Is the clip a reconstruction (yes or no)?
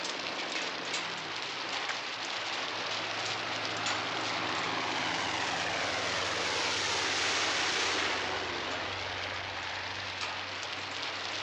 no